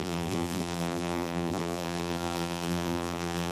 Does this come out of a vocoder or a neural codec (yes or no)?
yes